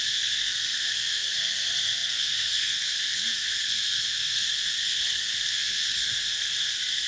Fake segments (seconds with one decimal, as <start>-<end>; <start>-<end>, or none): 0.0-7.1

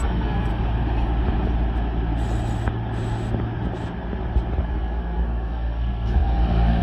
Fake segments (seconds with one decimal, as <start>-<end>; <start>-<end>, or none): 0.0-0.5; 4.6-6.8

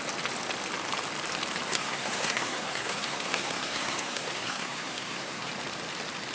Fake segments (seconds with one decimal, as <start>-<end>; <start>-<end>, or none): 1.7-5.5

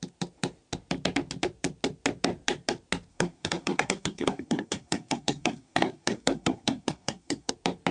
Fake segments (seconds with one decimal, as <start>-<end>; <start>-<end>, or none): 3.1-7.5

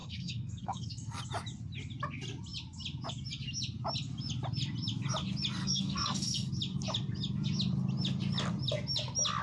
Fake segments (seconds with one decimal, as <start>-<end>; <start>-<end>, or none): 0.0-1.2; 5.6-6.5

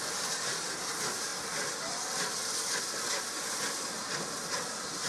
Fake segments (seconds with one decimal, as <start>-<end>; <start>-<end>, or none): none

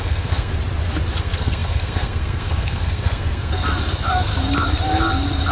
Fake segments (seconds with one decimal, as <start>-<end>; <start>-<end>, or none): 0.0-0.5; 1.2-4.3

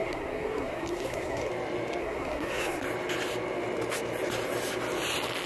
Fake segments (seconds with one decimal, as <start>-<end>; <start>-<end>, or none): 0.0-1.5; 2.0-2.8